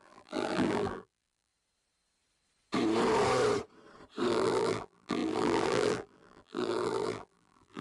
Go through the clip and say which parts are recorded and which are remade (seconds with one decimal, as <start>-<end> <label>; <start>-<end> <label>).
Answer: 0.0-1.5 remade; 1.5-4.3 recorded; 4.3-7.8 remade